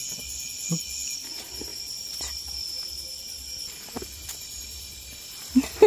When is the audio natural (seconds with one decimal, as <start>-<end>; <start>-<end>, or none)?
0.0-5.9